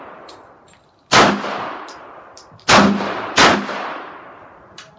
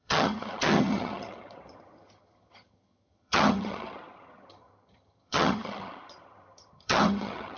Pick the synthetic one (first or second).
second